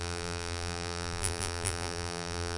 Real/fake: fake